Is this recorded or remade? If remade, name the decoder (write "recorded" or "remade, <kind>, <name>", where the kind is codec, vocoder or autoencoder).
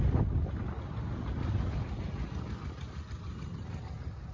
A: recorded